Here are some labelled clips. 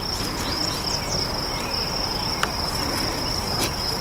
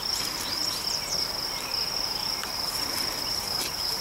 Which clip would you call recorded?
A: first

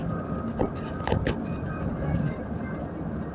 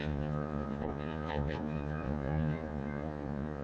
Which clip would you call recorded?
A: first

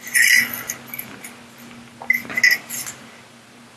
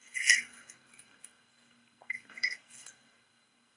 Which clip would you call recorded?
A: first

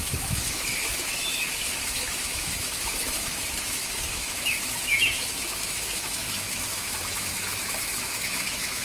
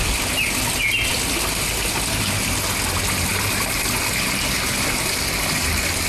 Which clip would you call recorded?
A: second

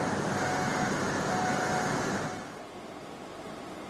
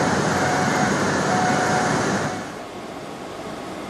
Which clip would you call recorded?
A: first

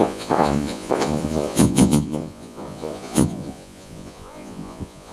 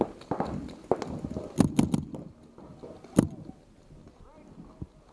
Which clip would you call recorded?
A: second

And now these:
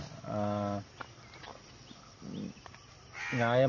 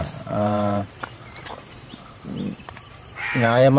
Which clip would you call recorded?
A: first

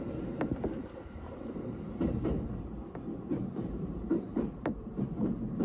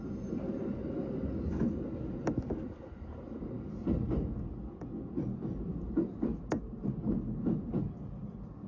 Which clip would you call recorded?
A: second